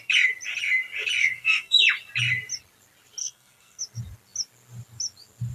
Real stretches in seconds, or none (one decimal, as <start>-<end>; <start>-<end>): 0.0-1.2; 1.8-3.2; 3.8-5.5